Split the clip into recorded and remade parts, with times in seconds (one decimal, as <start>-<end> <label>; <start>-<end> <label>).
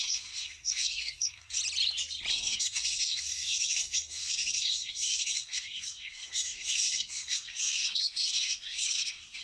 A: 0.0-1.6 remade; 1.6-2.3 recorded; 2.3-9.4 remade